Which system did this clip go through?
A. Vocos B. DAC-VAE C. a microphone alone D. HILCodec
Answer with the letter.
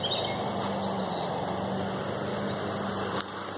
C